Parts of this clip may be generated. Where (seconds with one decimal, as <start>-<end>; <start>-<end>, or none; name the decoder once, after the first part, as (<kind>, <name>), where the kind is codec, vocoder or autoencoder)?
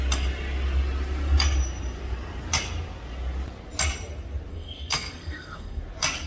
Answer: 4.5-5.8 (codec, SNAC)